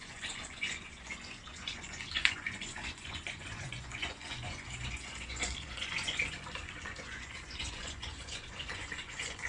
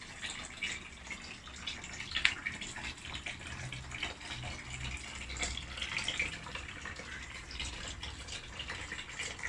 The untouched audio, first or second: second